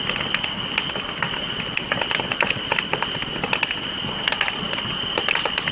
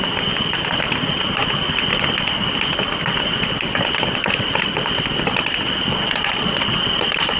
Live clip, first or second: first